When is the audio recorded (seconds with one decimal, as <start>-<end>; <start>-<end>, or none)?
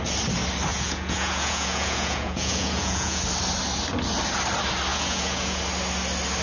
0.0-0.7; 3.2-4.9; 5.6-6.4